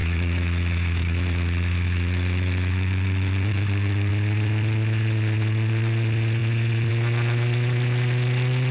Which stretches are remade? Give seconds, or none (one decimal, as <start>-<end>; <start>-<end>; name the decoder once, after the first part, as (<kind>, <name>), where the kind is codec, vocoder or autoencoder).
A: 0.0-4.1 (autoencoder, DAC-VAE)